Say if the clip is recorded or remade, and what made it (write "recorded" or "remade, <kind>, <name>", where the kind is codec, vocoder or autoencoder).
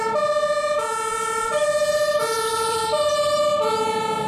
remade, vocoder, BigVGAN v2